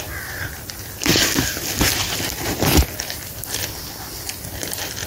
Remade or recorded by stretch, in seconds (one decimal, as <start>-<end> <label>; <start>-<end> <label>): 0.0-5.1 remade